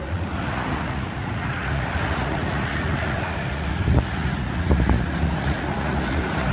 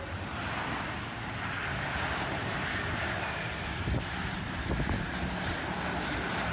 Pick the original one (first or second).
second